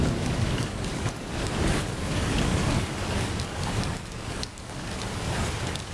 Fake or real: fake